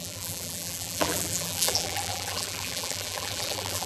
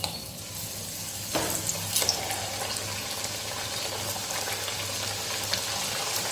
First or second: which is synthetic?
first